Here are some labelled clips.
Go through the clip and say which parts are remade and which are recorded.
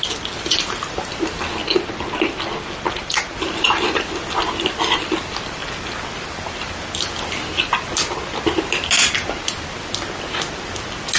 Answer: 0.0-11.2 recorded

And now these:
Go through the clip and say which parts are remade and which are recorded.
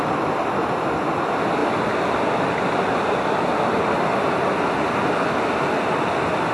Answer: 0.0-6.5 recorded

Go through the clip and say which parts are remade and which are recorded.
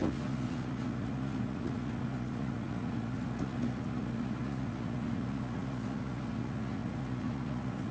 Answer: 0.0-7.9 remade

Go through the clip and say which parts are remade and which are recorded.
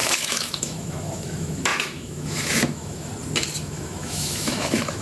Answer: 0.0-3.1 remade; 3.1-3.6 recorded; 3.6-5.0 remade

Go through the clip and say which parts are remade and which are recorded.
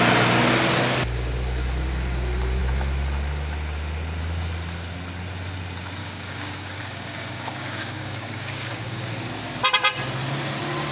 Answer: 0.0-6.0 recorded; 6.0-9.1 remade; 9.1-10.9 recorded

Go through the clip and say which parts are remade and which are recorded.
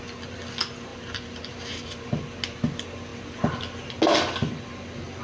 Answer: 0.0-0.9 recorded; 0.9-2.2 remade; 2.2-5.2 recorded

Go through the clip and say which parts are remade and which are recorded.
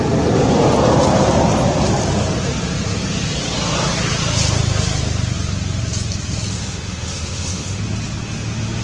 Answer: 0.0-6.5 recorded; 6.5-7.8 remade; 7.8-8.8 recorded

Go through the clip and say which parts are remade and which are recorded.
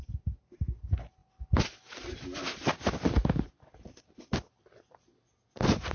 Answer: 0.0-5.9 recorded